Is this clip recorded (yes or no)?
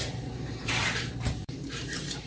no